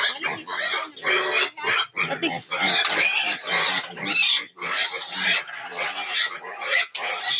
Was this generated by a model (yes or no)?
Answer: no